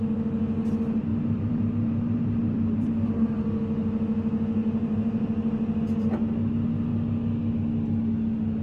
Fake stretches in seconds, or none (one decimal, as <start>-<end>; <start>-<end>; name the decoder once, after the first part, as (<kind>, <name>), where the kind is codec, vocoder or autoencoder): 1.1-3.2 (vocoder, BigVGAN v2); 4.6-5.8